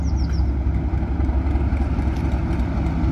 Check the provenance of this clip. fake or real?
real